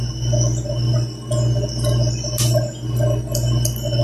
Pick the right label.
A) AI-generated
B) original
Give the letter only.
B